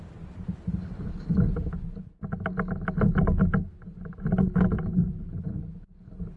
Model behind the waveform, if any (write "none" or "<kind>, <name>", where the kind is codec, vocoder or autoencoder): none